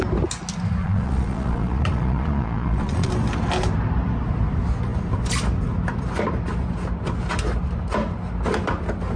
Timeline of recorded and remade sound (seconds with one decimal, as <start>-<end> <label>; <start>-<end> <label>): 0.0-0.8 recorded; 0.8-3.1 remade; 3.1-9.2 recorded